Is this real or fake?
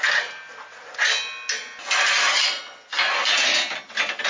real